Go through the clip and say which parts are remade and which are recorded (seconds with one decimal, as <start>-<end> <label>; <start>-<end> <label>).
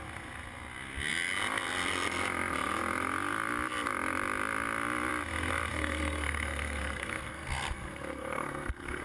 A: 0.0-5.7 recorded; 5.7-9.0 remade